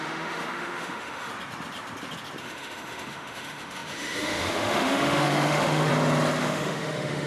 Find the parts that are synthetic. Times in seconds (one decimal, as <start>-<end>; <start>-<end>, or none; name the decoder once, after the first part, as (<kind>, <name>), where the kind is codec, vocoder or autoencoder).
0.0-1.3 (autoencoder, DAC-VAE); 2.4-5.9; 6.4-7.3